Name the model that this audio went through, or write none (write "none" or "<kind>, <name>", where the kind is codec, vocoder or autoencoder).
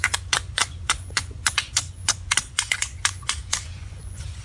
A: vocoder, Vocos